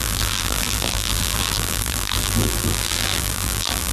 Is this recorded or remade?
remade